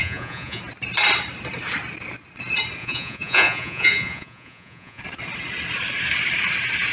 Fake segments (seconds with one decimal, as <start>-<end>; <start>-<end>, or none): 0.0-0.6; 2.8-5.0